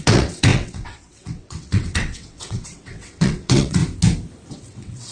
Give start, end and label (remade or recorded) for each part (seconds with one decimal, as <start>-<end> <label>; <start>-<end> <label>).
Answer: 0.0-3.8 remade; 3.8-4.5 recorded; 4.5-5.1 remade